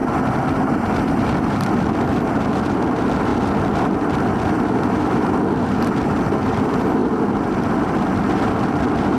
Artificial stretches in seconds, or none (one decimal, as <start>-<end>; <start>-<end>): 0.6-9.2